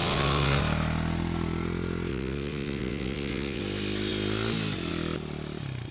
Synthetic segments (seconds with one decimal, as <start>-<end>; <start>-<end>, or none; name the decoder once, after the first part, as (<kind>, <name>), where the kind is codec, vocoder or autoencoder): 0.0-0.6 (vocoder, WaveNeXt); 2.1-3.6